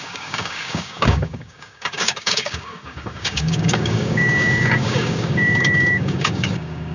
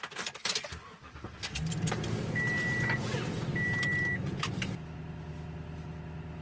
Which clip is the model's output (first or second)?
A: first